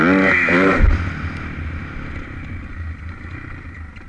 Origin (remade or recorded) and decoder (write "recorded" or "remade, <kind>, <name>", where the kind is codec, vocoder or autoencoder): recorded